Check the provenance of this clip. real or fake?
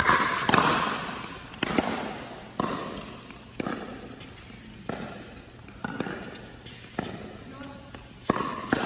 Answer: real